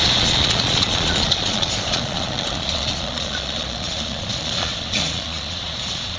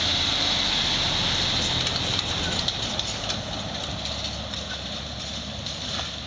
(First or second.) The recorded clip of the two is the second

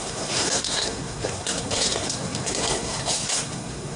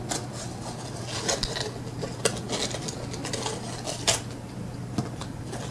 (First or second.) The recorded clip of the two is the second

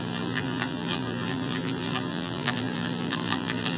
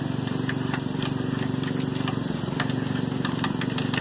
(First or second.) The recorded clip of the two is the second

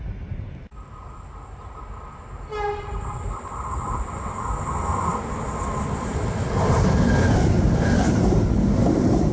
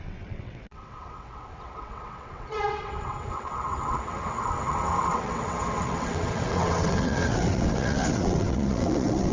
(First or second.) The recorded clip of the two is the first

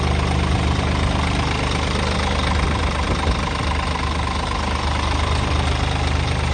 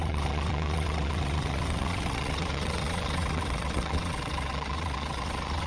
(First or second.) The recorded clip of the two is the first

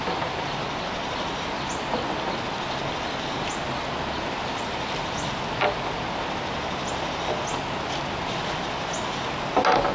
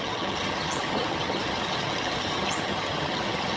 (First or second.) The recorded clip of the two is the first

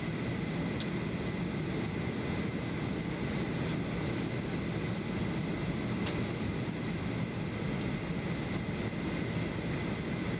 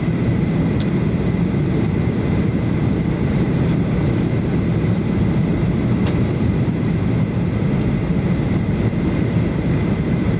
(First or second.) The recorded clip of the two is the first